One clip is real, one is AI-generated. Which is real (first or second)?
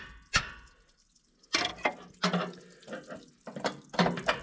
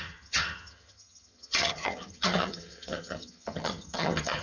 first